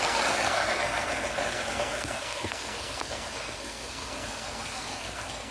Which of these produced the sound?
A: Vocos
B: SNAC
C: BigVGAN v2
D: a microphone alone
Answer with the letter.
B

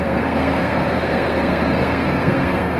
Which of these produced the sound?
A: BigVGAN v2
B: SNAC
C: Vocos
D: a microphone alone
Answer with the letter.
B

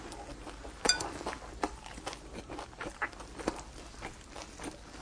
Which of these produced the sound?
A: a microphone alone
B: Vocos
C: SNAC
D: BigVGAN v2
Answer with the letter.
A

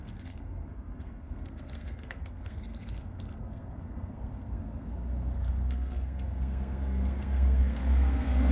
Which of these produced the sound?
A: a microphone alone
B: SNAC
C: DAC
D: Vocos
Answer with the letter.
B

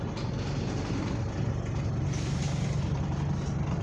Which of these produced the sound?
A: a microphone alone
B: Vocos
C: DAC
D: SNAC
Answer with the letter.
A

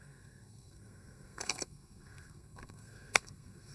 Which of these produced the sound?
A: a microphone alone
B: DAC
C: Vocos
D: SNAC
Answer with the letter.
D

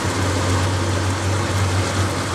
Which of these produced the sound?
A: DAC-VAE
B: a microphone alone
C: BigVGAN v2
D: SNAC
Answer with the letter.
B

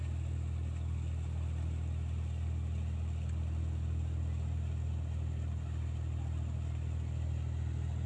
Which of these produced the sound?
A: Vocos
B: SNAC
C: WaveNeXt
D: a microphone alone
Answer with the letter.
D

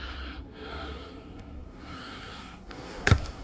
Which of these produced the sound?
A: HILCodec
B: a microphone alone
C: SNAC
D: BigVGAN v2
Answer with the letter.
C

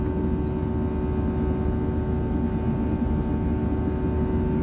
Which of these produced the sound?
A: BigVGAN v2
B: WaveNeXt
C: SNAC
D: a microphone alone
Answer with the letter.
D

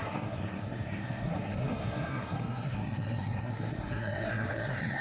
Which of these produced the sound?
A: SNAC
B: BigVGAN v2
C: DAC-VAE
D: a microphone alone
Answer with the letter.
A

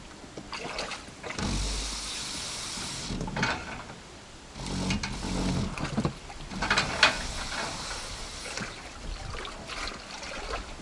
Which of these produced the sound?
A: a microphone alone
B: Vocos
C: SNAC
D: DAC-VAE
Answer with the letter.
A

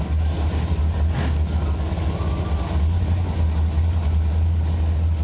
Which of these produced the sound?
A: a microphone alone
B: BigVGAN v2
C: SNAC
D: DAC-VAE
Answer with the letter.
A